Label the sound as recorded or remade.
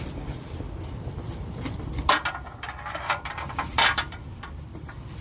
remade